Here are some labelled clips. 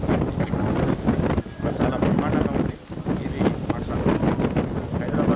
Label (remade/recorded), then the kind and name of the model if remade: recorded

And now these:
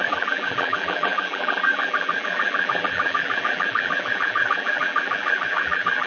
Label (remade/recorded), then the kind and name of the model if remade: remade, vocoder, BigVGAN v2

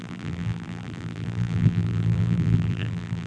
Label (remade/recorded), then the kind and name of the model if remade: remade, vocoder, BigVGAN v2